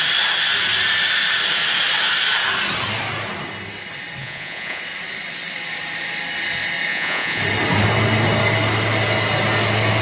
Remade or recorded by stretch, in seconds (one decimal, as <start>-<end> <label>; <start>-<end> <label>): 0.0-4.2 recorded; 4.2-4.8 remade; 4.8-6.9 recorded; 6.9-7.4 remade; 7.4-10.0 recorded

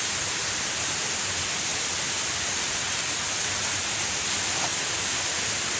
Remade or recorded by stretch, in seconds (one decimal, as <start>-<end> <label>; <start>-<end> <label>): 0.0-5.8 recorded

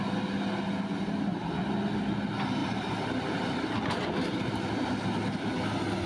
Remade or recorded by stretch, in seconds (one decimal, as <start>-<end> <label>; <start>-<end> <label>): 0.0-2.6 recorded; 2.6-5.0 remade; 5.0-6.1 recorded

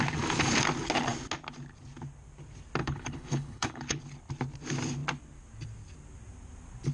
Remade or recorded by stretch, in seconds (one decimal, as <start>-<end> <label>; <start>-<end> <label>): 0.0-2.8 recorded; 2.8-4.0 remade; 4.0-6.9 recorded